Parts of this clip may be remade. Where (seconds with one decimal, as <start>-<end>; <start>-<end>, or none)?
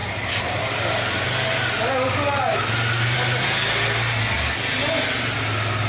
0.0-0.6